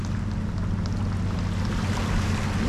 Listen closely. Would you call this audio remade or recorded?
recorded